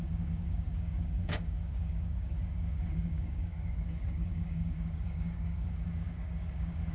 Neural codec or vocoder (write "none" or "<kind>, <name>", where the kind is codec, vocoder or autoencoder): codec, DAC